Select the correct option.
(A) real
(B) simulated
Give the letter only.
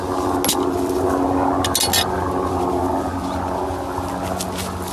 A